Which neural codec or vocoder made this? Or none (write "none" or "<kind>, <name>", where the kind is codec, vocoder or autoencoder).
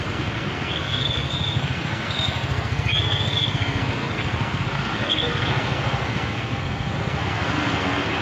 codec, SNAC